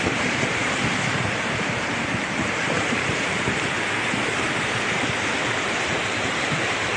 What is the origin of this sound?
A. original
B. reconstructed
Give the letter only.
B